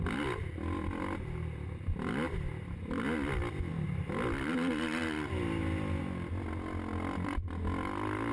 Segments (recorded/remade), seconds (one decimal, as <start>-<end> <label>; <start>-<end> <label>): 0.0-8.3 recorded